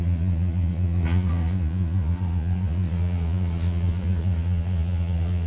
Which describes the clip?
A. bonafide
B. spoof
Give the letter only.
B